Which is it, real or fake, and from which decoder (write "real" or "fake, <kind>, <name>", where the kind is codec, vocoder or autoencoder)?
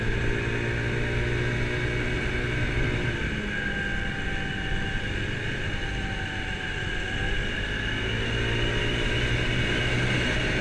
real